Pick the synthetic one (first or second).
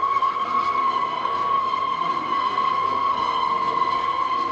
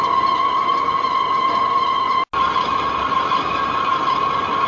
first